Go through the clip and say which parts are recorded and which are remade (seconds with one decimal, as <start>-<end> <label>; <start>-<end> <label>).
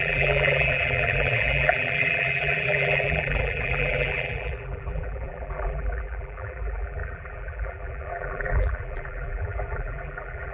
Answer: 0.0-10.5 remade